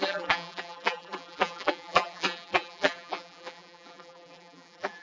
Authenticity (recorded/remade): remade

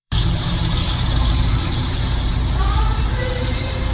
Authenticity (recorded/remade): remade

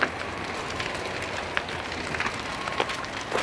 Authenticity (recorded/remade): recorded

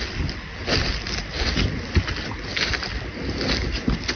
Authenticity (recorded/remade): recorded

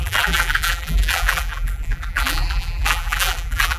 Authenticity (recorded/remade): remade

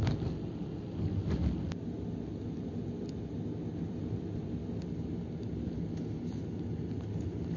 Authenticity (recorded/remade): recorded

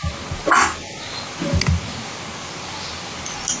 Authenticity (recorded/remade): recorded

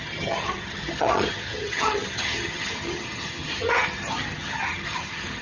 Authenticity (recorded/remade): remade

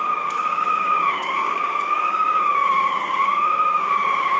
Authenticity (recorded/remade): remade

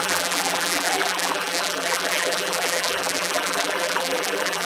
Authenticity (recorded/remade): remade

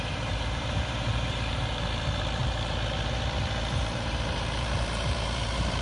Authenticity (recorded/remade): remade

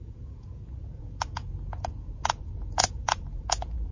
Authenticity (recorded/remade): remade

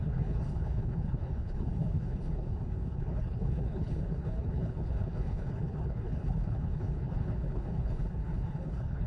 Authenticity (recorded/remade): remade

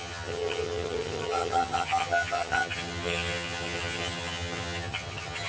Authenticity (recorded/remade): remade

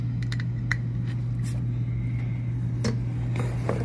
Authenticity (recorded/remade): recorded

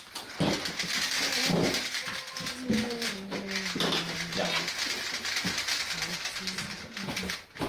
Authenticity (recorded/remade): recorded